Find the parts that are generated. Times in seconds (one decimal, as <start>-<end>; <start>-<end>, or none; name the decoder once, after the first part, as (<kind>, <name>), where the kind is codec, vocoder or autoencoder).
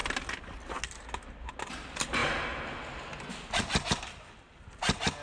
none